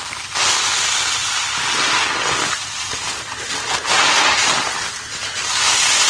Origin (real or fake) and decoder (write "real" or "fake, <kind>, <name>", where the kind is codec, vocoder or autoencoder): real